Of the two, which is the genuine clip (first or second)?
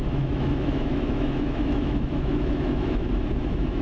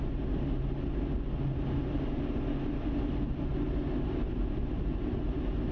second